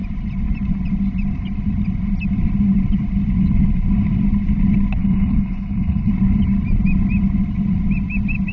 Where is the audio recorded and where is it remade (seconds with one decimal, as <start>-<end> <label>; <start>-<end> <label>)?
0.0-5.0 recorded; 5.0-6.1 remade; 6.1-8.5 recorded